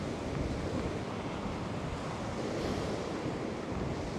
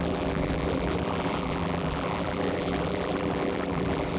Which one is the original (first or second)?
first